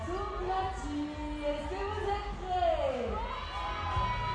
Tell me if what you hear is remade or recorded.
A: recorded